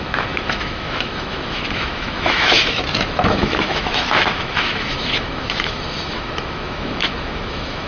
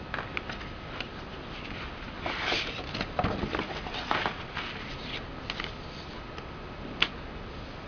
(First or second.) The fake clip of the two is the first